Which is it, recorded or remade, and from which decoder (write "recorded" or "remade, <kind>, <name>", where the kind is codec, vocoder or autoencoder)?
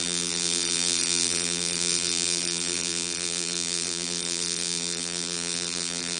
remade, vocoder, BigVGAN v2